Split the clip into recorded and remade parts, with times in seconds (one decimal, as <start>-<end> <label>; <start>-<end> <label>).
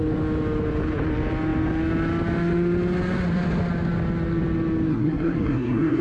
0.0-4.9 recorded; 4.9-6.0 remade